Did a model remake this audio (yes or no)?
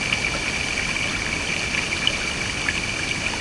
no